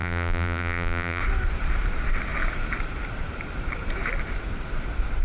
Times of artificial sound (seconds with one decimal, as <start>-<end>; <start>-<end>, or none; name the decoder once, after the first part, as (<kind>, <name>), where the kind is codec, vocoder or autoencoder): 0.0-1.2 (vocoder, BigVGAN v2)

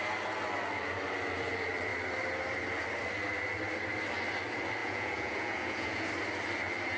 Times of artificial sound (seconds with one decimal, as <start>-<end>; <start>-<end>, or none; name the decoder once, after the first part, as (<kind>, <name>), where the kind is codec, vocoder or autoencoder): 4.8-6.1 (vocoder, Vocos)